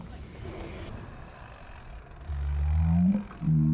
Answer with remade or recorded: recorded